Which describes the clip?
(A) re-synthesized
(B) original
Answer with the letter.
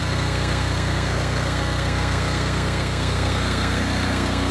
A